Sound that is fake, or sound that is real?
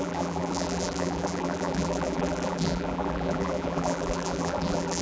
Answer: fake